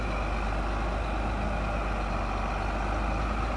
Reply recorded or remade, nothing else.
recorded